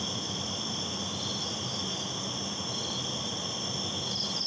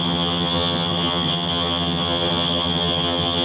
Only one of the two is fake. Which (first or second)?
second